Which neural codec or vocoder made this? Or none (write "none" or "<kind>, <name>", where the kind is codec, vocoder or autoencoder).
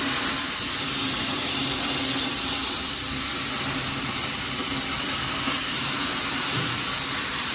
none